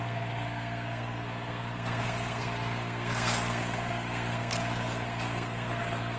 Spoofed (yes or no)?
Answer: yes